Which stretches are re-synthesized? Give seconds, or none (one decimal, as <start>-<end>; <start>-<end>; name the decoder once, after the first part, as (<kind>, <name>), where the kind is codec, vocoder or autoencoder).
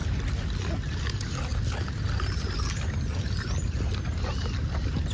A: none